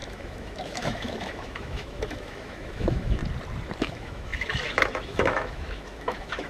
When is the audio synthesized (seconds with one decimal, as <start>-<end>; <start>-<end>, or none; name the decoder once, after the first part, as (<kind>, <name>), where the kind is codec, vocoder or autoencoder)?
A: 0.0-3.2 (autoencoder, DAC-VAE); 3.8-6.5